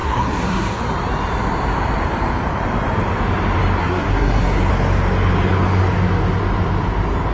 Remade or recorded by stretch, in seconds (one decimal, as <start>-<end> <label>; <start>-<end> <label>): 0.0-0.8 remade; 0.8-3.8 recorded; 3.8-4.7 remade; 4.7-7.3 recorded